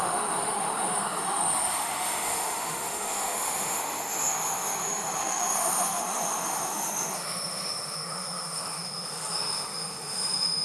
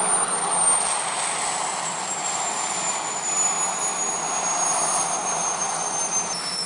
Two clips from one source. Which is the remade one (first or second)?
first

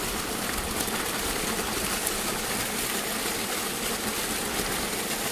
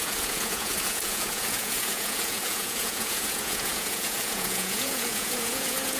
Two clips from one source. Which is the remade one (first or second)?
second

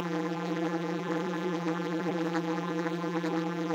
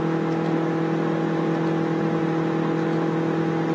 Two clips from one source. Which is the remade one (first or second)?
first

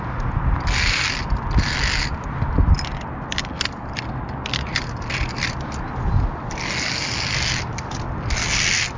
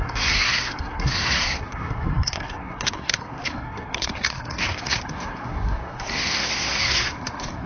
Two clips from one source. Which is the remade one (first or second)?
second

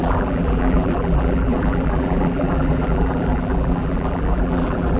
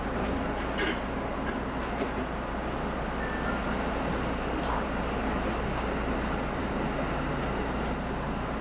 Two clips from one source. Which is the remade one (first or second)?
first